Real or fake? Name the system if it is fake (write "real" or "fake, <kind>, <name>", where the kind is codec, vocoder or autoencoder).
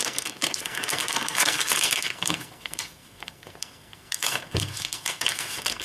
fake, codec, SNAC